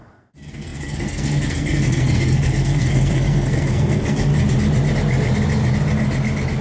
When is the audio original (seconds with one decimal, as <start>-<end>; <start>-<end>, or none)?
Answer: 4.3-6.6